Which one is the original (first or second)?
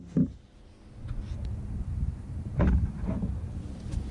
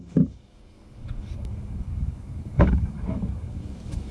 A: first